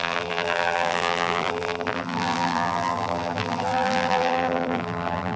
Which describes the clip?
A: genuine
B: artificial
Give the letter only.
B